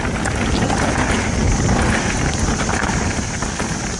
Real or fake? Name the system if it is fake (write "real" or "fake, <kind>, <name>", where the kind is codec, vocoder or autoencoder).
real